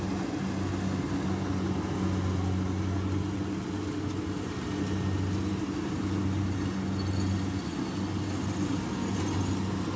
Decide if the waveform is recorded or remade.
recorded